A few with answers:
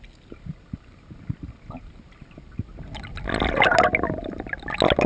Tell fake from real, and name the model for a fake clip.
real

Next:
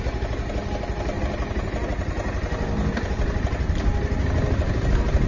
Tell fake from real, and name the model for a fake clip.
real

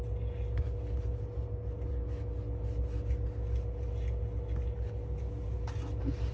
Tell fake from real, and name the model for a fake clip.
real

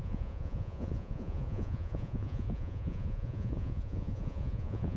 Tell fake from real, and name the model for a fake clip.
fake, vocoder, Vocos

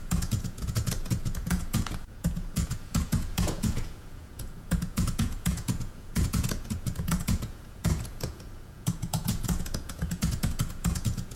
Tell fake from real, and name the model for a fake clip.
fake, vocoder, Vocos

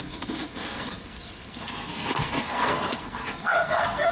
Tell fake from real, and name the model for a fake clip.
fake, codec, SNAC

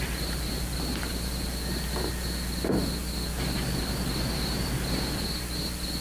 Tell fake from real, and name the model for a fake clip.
real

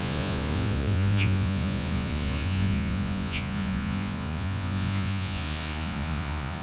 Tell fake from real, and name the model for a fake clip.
fake, vocoder, Vocos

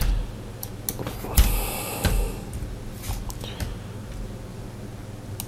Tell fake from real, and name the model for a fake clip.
real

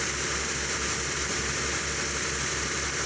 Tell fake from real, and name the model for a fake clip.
real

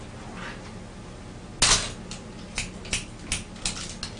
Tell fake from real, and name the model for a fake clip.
real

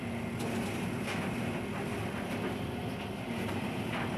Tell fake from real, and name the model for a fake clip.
real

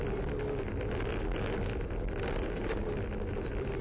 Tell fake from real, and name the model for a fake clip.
real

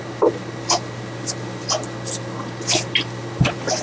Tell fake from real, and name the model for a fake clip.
real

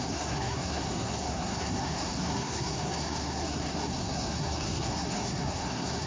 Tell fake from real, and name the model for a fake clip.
fake, codec, SNAC